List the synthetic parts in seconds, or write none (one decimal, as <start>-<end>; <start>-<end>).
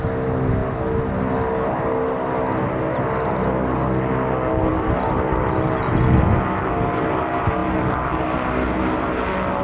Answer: none